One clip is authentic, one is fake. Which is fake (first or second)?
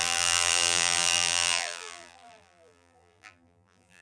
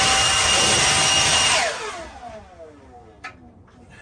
first